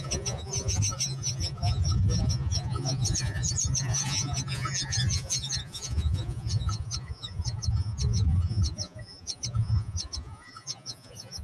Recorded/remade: remade